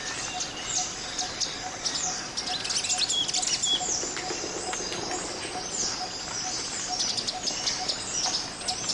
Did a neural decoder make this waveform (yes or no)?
no